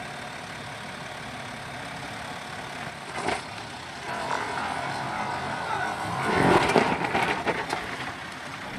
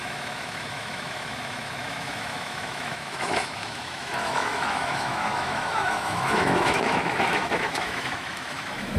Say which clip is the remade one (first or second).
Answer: second